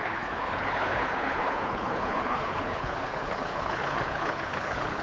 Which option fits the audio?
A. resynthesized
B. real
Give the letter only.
A